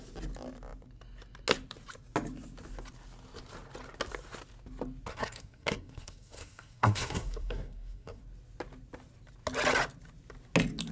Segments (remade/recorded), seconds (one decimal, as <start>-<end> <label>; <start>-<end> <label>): 0.0-5.1 recorded; 5.1-8.2 remade; 8.2-10.9 recorded